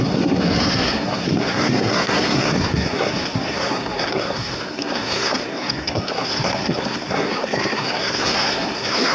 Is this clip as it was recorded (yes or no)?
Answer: no